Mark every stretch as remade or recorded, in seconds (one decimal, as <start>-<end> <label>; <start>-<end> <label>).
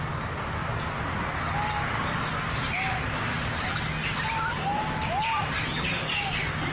0.0-6.7 recorded